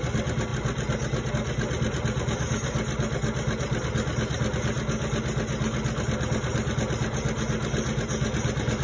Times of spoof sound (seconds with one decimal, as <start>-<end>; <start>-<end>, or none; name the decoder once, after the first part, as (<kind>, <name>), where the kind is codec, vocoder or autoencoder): none